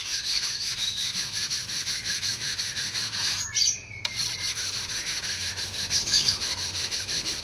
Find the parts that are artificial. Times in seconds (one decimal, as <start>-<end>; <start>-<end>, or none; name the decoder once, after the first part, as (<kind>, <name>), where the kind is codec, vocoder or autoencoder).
0.0-3.4 (autoencoder, DAC-VAE); 4.5-7.4